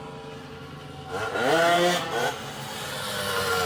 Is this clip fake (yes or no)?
no